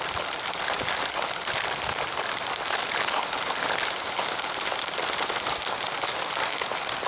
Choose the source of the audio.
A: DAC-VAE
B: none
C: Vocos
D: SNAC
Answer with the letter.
B